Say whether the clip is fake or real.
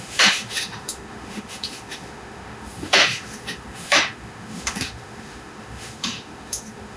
fake